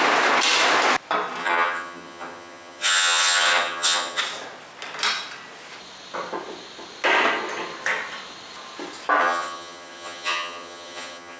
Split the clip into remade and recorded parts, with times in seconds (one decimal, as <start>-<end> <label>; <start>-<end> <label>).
0.0-1.4 recorded; 1.4-4.2 remade; 4.2-9.2 recorded; 9.2-11.4 remade